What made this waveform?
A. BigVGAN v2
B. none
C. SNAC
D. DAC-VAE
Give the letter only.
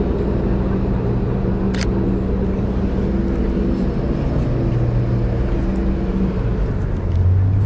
B